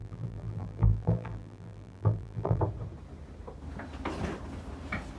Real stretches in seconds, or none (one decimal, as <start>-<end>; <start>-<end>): 2.6-5.2